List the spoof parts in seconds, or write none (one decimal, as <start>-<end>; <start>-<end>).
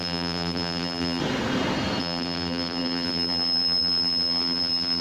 0.0-1.2; 2.0-5.0